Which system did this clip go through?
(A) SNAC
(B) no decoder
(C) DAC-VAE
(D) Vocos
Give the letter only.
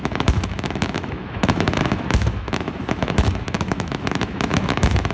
C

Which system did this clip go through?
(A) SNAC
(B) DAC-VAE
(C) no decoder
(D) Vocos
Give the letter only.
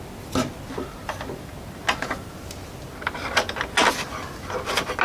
C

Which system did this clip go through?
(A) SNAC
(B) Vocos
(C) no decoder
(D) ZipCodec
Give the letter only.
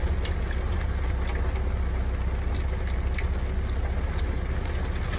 C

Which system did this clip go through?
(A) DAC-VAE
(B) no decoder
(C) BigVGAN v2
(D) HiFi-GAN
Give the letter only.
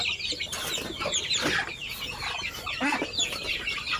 B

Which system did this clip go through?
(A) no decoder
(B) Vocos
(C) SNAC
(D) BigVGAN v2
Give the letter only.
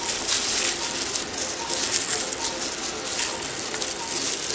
A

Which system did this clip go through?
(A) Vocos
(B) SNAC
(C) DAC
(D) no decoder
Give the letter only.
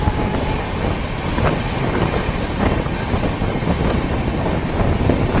D